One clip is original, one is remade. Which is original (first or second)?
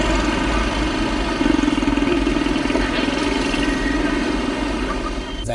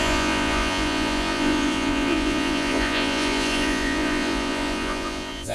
first